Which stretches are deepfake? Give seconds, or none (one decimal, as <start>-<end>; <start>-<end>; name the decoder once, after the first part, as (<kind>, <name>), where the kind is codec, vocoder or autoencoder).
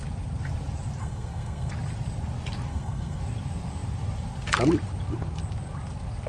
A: 1.0-1.7 (codec, SNAC); 2.7-3.2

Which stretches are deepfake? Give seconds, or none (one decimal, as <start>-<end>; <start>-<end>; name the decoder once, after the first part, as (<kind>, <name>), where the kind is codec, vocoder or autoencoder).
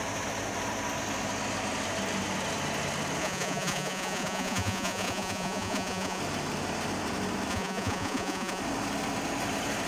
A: 3.2-6.2 (vocoder, Vocos); 7.5-8.6